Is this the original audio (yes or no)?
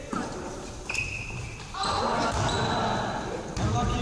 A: yes